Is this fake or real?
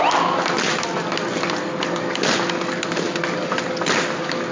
real